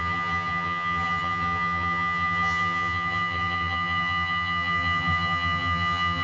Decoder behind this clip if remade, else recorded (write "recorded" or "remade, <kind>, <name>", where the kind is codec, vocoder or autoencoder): remade, vocoder, HiFi-GAN